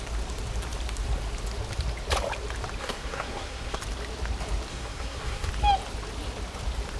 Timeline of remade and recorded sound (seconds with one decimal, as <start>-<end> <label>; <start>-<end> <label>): 0.0-2.8 recorded; 2.8-3.8 remade; 3.8-4.7 recorded; 4.7-5.5 remade; 5.5-7.0 recorded